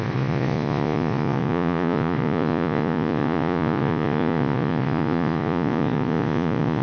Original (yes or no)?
no